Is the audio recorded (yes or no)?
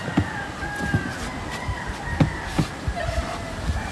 yes